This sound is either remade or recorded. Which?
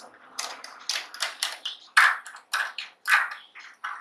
recorded